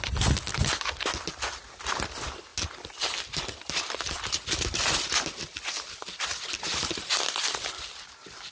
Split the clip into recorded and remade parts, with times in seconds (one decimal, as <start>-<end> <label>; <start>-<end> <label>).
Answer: 0.0-8.5 recorded